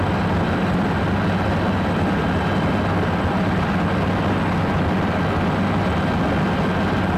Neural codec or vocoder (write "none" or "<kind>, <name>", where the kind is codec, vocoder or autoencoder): none